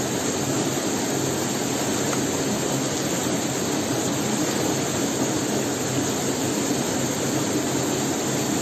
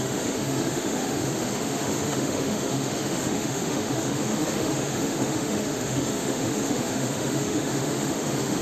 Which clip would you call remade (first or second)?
second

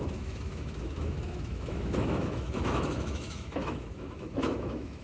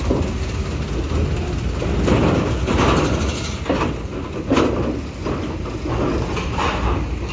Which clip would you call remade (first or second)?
first